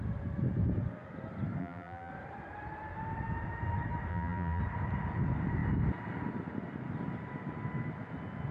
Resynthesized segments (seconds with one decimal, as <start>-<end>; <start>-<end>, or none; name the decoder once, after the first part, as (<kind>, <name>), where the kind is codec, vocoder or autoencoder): 1.6-2.1 (vocoder, BigVGAN v2); 4.1-4.6